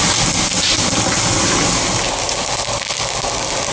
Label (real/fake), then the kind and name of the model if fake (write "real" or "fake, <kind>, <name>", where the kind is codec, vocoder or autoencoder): real